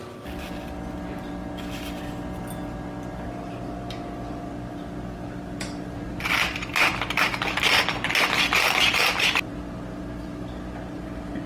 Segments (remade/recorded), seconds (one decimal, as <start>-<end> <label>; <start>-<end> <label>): 0.0-11.5 recorded